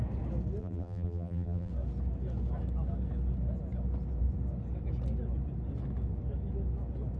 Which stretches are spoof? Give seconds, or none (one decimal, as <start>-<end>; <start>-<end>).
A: 0.6-1.7